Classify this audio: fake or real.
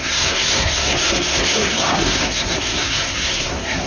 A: fake